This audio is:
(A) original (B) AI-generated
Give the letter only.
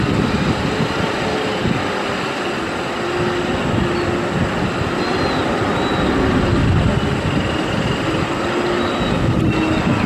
A